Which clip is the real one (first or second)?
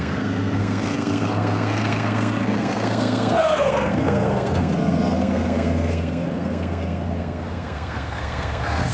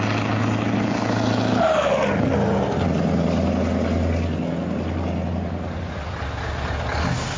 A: second